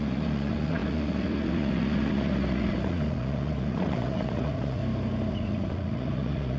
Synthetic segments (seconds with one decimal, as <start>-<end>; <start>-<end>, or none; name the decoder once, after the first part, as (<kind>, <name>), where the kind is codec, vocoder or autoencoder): 0.0-4.8 (vocoder, Vocos); 5.3-6.6